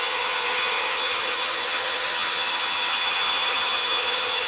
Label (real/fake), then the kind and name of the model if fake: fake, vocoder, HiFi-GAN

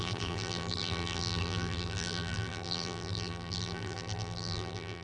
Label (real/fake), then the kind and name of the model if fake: fake, vocoder, BigVGAN v2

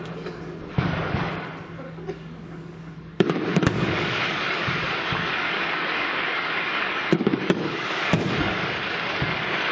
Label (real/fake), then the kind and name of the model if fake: fake, codec, DAC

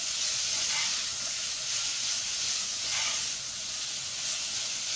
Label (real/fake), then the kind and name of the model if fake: fake, vocoder, Vocos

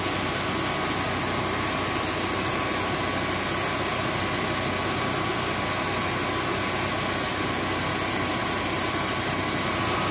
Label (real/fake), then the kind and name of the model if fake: real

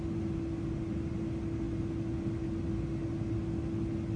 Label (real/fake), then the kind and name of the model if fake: real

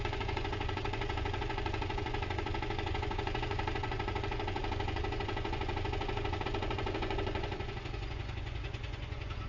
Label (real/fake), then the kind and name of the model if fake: fake, vocoder, Vocos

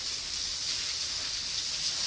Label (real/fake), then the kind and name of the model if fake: real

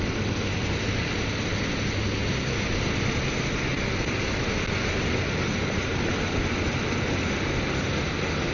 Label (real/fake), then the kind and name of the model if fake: real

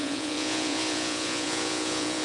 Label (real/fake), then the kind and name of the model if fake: fake, vocoder, Vocos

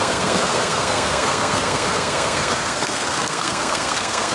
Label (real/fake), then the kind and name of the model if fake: fake, codec, SNAC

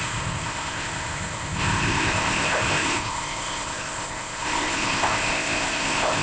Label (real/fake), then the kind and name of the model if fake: fake, codec, ZipCodec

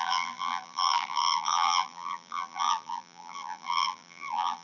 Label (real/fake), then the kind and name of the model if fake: fake, vocoder, BigVGAN v2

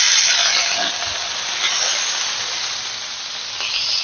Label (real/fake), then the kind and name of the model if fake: real